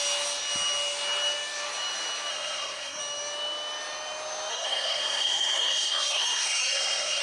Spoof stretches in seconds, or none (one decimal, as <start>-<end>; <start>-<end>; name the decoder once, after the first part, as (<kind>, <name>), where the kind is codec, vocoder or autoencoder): 2.3-3.0 (codec, SNAC); 4.5-7.2